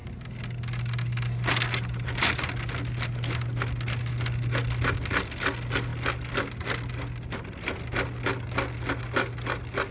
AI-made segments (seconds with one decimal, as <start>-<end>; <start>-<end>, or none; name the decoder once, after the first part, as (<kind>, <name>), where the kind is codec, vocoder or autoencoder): none